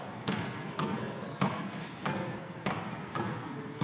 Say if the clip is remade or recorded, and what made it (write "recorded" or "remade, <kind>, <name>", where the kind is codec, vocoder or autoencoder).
remade, codec, SNAC